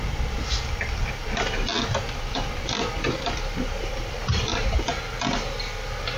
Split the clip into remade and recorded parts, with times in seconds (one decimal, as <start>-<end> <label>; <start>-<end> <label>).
0.0-1.2 recorded; 1.2-4.9 remade; 4.9-6.2 recorded